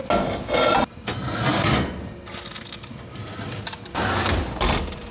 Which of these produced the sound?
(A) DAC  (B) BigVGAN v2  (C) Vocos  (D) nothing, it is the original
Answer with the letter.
D